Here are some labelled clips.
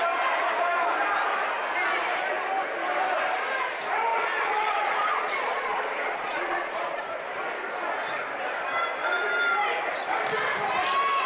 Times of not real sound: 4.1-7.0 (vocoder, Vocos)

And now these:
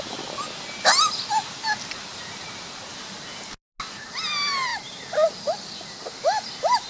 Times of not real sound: none